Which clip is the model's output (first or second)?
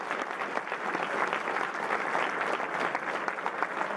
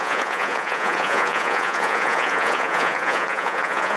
second